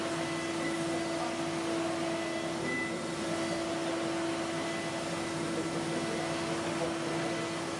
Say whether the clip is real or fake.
real